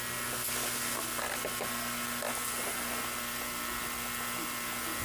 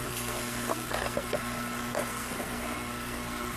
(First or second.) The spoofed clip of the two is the second